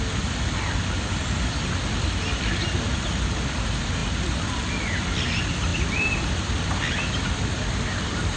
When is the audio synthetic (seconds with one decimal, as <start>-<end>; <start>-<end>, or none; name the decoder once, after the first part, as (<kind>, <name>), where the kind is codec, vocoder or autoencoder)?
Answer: none